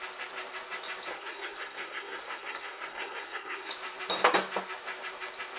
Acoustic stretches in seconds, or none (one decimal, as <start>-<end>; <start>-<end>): 0.0-1.1; 3.7-5.6